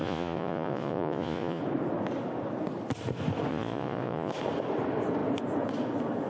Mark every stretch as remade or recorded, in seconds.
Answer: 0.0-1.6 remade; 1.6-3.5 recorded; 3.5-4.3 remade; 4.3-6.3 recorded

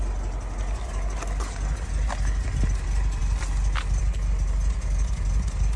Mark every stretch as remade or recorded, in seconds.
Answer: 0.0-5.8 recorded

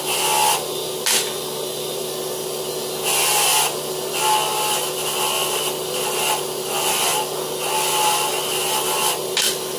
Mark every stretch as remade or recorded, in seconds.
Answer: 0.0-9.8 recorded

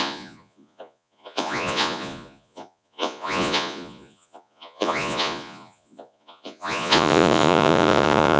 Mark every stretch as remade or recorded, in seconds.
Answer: 0.0-8.4 remade

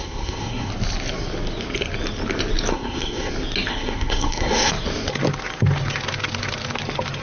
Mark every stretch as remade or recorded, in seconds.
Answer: 0.0-0.7 remade; 0.7-2.7 recorded; 2.7-3.3 remade; 3.3-3.7 recorded; 3.7-4.7 remade; 4.7-7.2 recorded

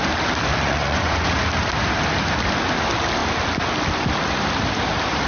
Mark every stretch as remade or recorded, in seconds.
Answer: 0.0-0.5 recorded; 0.5-1.3 remade; 1.3-5.3 recorded

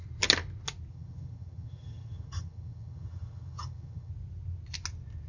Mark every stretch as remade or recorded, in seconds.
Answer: 0.0-0.9 recorded; 0.9-4.1 remade; 4.1-5.3 recorded